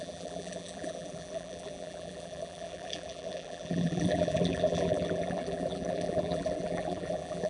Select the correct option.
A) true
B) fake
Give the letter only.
B